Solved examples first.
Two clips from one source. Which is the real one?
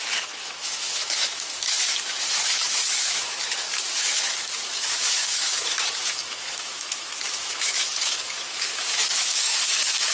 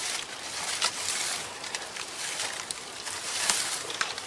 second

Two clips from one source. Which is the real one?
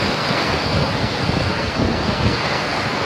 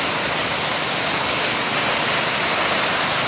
second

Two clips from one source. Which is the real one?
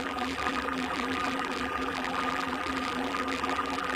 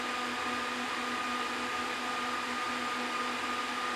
second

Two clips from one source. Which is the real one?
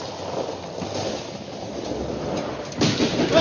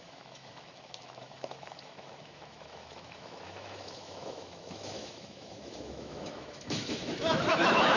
first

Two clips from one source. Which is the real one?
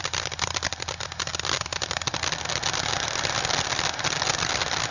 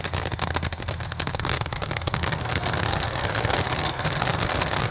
first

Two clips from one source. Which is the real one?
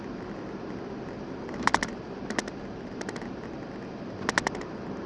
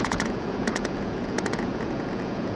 first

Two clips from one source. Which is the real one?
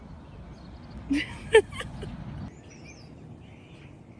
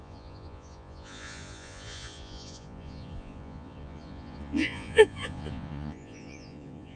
first